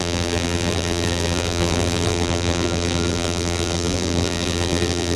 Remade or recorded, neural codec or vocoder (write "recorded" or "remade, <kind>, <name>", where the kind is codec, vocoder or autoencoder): remade, vocoder, BigVGAN v2